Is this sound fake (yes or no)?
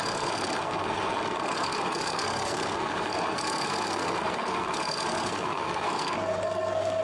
yes